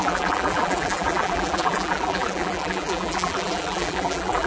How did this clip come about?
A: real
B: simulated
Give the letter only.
B